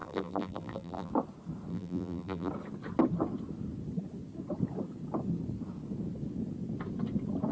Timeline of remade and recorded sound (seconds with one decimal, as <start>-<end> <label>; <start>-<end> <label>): 0.0-1.1 remade; 1.1-1.7 recorded; 1.7-2.5 remade; 2.5-7.5 recorded